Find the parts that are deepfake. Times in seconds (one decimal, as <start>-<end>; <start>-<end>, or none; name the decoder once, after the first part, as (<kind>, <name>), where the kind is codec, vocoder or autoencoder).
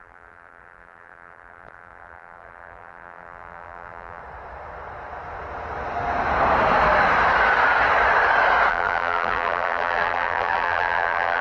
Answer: 0.0-4.2 (vocoder, BigVGAN v2); 8.7-11.4